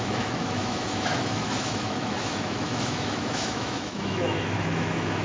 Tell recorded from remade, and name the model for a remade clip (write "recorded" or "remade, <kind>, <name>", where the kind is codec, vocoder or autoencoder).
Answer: remade, autoencoder, DAC-VAE